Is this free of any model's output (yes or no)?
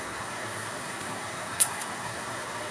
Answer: no